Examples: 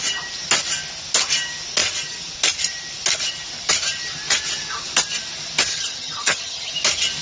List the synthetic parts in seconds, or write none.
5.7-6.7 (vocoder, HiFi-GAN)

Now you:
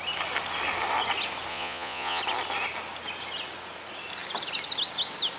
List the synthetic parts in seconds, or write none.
1.5-2.2 (vocoder, Vocos)

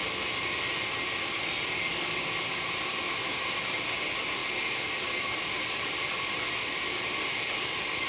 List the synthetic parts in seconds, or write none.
3.1-4.4 (vocoder, BigVGAN v2); 5.4-8.1

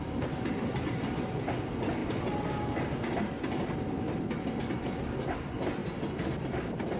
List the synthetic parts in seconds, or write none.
none

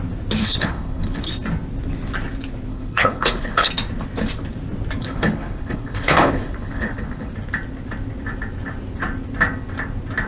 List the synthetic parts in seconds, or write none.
0.4-1.3 (codec, HILCodec); 2.7-3.7; 5.0-7.3

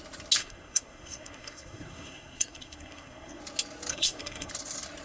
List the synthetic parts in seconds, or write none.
0.4-3.4 (codec, SNAC); 3.9-4.5

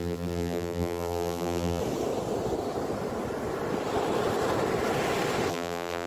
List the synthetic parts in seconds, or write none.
0.0-1.8 (vocoder, BigVGAN v2); 5.5-6.1

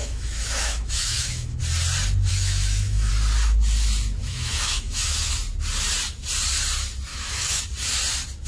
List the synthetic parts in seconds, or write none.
0.0-1.6 (autoencoder, DAC-VAE); 2.3-3.1; 4.2-5.3; 7.1-7.6